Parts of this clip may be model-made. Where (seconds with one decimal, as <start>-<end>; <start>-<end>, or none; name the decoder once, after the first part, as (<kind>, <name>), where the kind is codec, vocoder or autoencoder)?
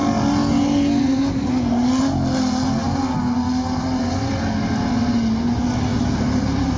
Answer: 5.9-6.8 (vocoder, BigVGAN v2)